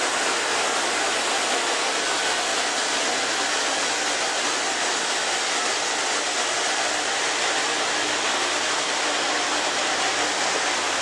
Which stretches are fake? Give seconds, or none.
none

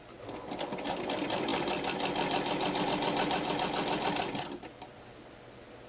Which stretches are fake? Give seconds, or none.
none

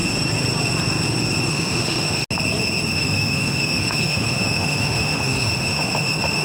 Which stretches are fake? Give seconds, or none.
1.5-2.2 (autoencoder, DAC-VAE); 2.9-6.4

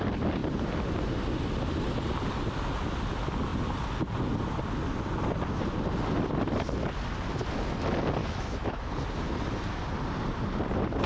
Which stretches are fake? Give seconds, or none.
8.2-8.9 (autoencoder, DAC-VAE)

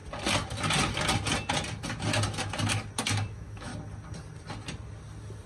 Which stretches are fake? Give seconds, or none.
3.3-3.7 (autoencoder, DAC-VAE)

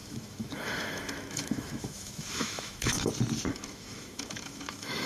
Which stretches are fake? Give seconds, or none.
0.0-3.1 (autoencoder, DAC-VAE); 3.5-5.1